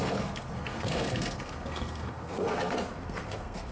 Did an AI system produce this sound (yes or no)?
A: yes